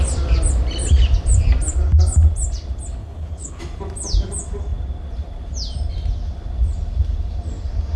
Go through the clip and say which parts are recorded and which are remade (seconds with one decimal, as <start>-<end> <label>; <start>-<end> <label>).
0.0-3.0 recorded; 3.0-3.6 remade; 3.6-8.0 recorded